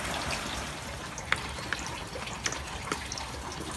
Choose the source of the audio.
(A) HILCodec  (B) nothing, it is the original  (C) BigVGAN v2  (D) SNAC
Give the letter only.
B